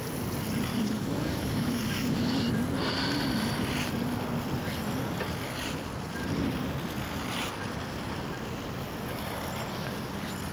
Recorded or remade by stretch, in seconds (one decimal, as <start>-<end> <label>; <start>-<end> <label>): 0.0-0.7 recorded; 0.7-2.5 remade; 2.5-10.5 recorded

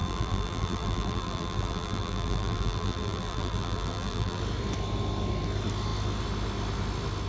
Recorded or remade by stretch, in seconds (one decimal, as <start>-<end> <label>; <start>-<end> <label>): 0.0-4.4 remade; 4.4-7.3 recorded

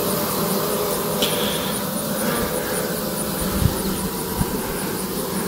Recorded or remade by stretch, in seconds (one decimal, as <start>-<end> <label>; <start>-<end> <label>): 0.0-5.5 recorded

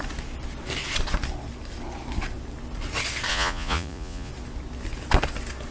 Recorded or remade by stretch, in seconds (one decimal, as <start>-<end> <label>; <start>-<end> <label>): 0.0-3.3 recorded; 3.3-4.3 remade; 4.3-5.7 recorded

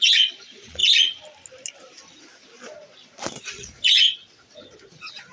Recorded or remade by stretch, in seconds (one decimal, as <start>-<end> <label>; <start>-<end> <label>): 0.0-0.8 remade; 0.8-2.8 recorded; 2.8-5.3 remade

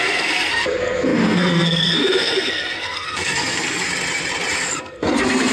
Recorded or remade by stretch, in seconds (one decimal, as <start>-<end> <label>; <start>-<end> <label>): 0.0-3.9 remade; 3.9-4.8 recorded; 4.8-5.5 remade

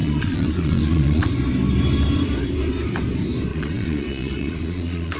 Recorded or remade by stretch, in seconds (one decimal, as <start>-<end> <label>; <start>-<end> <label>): 0.0-1.3 remade; 1.3-3.5 recorded; 3.5-5.2 remade

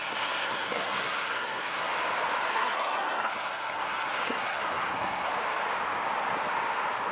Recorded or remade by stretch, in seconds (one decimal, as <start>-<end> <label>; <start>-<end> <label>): 0.0-1.9 remade; 1.9-2.5 recorded; 2.5-5.3 remade; 5.3-7.1 recorded